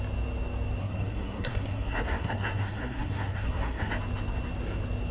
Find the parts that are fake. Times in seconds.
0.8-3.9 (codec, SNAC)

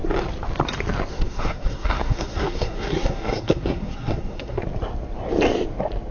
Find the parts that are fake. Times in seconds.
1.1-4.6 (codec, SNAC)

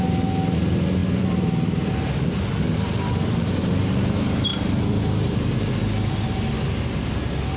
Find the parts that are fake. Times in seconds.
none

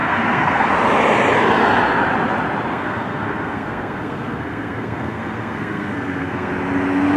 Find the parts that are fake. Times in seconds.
0.0-0.7 (codec, SNAC); 2.7-6.5

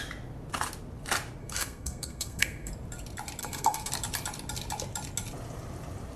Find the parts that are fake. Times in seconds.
1.4-2.7 (codec, SNAC); 3.4-3.9